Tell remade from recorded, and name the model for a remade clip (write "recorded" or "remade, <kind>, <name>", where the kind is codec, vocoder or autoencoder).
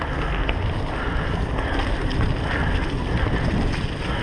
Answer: recorded